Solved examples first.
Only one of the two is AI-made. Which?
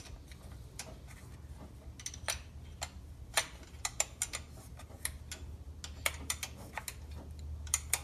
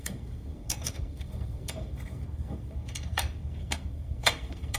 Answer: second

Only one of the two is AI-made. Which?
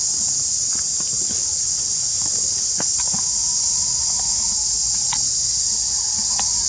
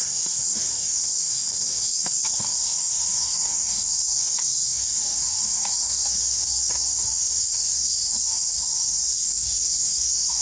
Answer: second